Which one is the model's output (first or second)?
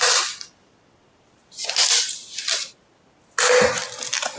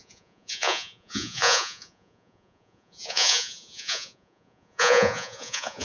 second